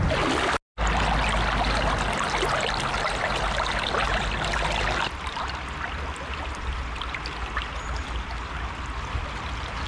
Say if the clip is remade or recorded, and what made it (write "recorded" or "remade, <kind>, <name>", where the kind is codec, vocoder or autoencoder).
recorded